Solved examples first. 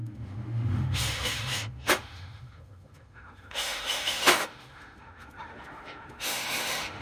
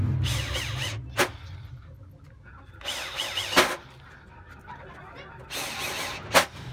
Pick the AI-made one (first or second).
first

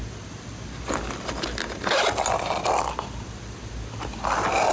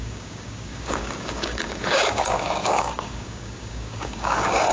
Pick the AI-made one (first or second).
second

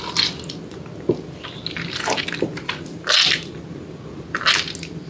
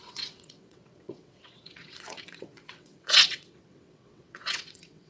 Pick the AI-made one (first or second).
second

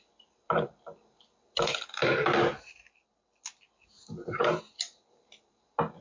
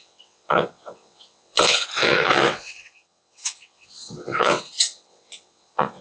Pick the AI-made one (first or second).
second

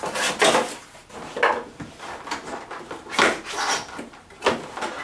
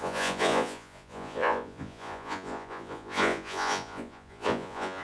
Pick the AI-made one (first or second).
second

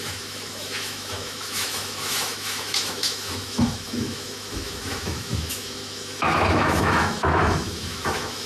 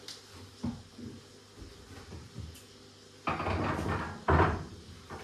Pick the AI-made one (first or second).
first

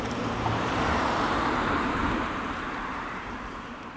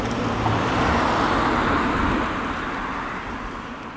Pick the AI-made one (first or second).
first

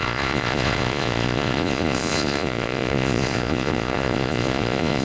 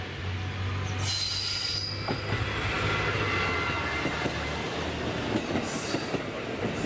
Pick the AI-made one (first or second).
first